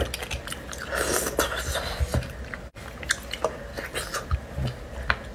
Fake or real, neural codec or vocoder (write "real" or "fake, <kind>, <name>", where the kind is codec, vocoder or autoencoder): real